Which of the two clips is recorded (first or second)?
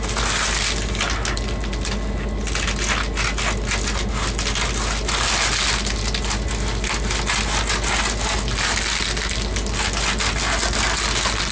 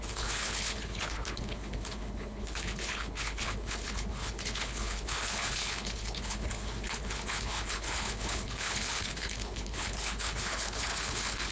first